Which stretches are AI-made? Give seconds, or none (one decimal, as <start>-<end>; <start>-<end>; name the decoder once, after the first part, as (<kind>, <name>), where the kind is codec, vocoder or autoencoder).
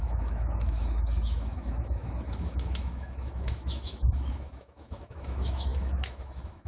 0.0-6.7 (autoencoder, DAC-VAE)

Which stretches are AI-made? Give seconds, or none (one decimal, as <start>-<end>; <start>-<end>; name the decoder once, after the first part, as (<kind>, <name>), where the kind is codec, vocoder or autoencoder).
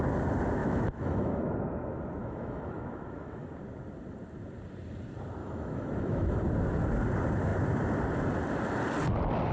0.6-1.5 (autoencoder, DAC-VAE); 2.2-3.5; 5.4-6.4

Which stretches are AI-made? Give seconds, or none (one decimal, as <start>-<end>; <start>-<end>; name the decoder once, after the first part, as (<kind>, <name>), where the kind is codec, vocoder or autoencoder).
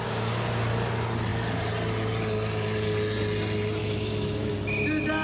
3.8-4.5 (autoencoder, DAC-VAE)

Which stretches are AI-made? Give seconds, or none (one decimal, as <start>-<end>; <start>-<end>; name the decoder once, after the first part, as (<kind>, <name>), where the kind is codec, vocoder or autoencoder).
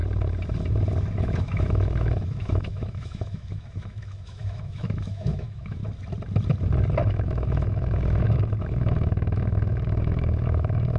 1.2-5.8 (autoencoder, DAC-VAE); 7.1-11.0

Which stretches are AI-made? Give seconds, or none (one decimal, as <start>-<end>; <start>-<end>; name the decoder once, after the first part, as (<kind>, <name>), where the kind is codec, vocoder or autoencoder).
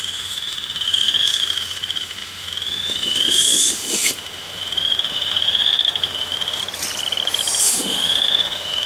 0.0-6.6 (autoencoder, DAC-VAE); 7.6-8.9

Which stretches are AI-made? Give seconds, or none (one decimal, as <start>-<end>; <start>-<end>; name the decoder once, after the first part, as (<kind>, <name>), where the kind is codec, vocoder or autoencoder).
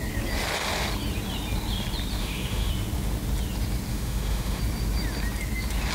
2.2-2.7 (autoencoder, DAC-VAE); 3.9-4.6